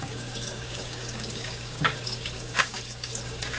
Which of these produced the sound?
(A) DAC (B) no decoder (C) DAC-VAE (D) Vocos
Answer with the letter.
A